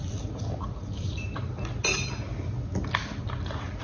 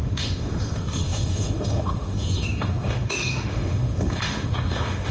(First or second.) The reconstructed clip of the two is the second